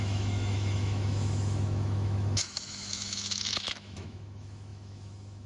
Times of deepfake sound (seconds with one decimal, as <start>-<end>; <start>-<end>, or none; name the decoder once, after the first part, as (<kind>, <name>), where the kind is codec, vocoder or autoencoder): 0.0-5.5 (autoencoder, DAC-VAE)